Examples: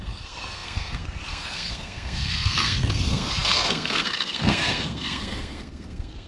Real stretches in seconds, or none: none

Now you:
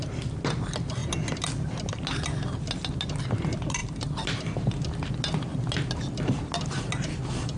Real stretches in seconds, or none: 0.0-7.6

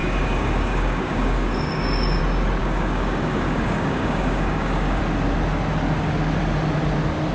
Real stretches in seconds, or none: 2.2-2.6; 5.0-7.3

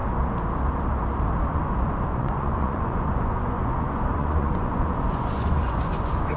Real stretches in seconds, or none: 0.0-1.5

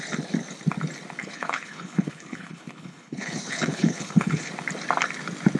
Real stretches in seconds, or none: 0.0-1.2; 4.5-5.6

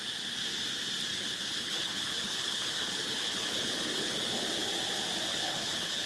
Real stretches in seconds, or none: 0.0-1.1; 4.4-5.3

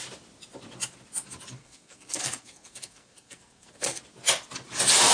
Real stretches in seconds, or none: 0.0-1.6; 4.0-5.1